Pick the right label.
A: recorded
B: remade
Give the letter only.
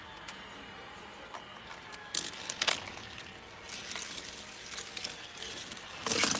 A